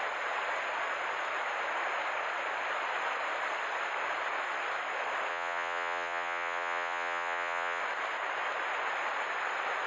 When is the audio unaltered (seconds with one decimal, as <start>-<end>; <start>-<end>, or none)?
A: 0.0-5.3; 7.8-9.9

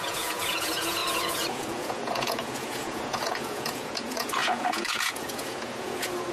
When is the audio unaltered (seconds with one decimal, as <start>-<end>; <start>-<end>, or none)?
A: none